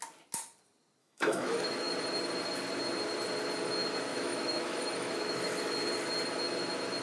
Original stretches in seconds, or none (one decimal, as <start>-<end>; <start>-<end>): 0.0-1.0; 1.9-4.1; 5.8-7.0